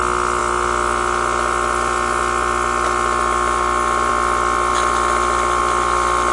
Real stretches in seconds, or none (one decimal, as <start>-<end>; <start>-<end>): 0.0-6.3